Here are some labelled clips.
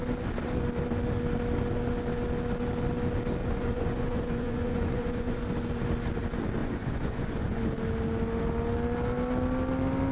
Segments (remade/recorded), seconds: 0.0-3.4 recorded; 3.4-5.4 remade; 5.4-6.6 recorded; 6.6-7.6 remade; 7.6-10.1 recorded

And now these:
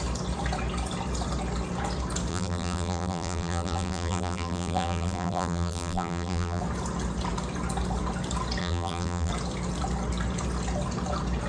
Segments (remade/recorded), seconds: 0.0-2.3 recorded; 2.3-6.6 remade; 6.6-8.6 recorded; 8.6-9.3 remade; 9.3-11.5 recorded